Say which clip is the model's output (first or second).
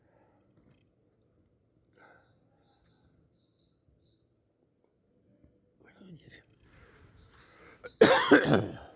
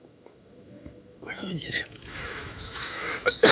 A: second